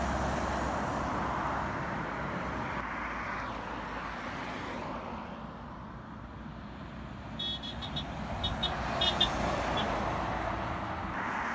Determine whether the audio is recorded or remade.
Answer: recorded